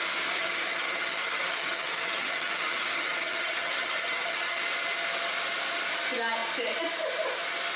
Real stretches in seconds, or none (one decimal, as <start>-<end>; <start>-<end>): 0.0-0.4; 4.6-7.8